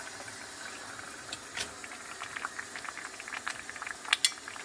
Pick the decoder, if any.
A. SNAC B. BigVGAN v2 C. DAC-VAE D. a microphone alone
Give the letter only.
D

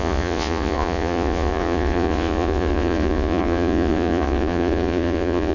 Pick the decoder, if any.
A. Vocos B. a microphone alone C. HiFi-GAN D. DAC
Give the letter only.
A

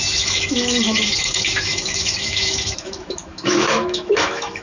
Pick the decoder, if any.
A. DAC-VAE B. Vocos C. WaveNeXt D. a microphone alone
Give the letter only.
A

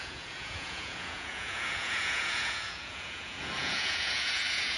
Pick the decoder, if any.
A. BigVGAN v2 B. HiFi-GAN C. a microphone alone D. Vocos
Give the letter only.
D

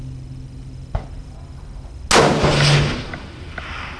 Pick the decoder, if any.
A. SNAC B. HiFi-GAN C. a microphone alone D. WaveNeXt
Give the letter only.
C